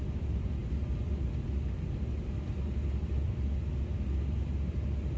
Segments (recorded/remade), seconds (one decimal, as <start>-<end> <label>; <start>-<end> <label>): 0.0-5.2 recorded